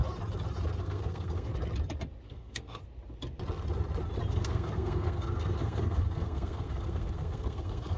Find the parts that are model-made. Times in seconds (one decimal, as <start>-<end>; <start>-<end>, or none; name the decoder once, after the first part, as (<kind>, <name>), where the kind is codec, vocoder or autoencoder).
0.8-1.5 (codec, SNAC); 2.3-2.8; 4.3-8.0